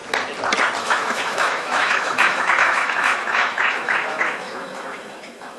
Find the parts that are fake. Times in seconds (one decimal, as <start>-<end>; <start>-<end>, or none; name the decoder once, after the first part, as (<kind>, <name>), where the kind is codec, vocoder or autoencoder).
0.8-5.6 (autoencoder, DAC-VAE)

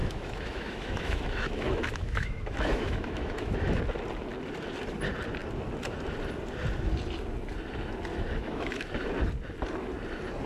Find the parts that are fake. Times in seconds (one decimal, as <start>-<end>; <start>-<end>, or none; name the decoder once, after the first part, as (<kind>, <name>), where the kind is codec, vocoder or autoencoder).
0.0-3.8 (autoencoder, DAC-VAE); 8.1-8.9

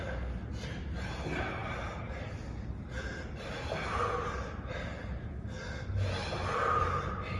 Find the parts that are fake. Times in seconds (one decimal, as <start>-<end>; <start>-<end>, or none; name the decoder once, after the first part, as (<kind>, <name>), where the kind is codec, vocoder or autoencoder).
none

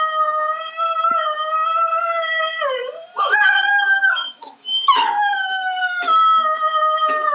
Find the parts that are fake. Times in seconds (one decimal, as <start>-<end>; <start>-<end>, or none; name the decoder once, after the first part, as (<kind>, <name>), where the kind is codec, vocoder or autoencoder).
0.0-1.9 (autoencoder, DAC-VAE); 3.2-7.3

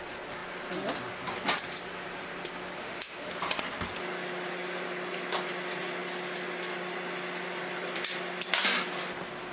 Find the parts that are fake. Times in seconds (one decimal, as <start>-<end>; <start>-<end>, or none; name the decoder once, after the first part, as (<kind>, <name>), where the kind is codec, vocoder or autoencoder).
2.8-3.3 (autoencoder, DAC-VAE)

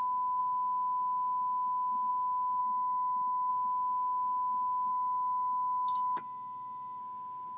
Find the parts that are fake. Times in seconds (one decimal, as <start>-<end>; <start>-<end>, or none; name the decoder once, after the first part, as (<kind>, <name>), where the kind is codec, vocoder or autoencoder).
2.6-3.5 (autoencoder, DAC-VAE); 4.9-7.0